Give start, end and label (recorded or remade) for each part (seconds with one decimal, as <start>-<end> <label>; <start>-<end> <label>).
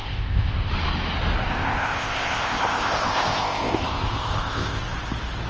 0.0-0.7 remade; 0.7-1.5 recorded; 1.5-4.8 remade; 4.8-5.5 recorded